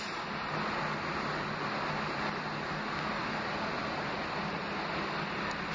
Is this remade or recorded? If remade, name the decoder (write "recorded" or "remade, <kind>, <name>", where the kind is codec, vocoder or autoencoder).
recorded